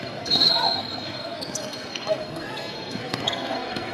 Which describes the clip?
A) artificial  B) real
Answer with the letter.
A